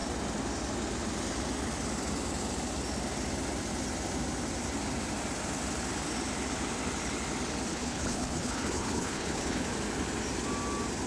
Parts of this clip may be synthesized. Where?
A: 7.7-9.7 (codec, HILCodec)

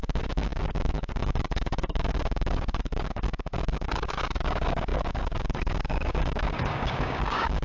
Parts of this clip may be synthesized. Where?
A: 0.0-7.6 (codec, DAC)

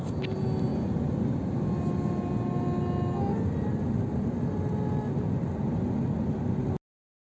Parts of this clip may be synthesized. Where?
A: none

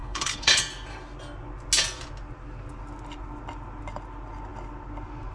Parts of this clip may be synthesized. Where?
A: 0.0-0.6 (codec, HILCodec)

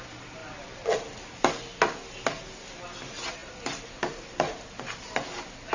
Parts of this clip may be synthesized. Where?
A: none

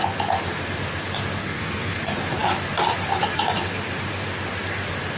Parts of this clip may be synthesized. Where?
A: 1.4-2.0 (codec, SNAC)

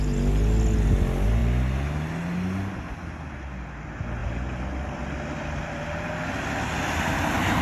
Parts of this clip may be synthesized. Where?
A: none

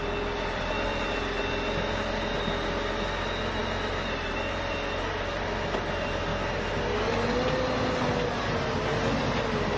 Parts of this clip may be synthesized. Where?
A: none